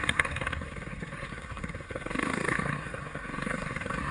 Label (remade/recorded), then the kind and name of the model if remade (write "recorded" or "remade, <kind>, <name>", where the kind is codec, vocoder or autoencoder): remade, codec, SNAC